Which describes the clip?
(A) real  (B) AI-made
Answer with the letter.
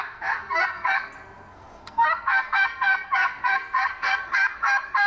B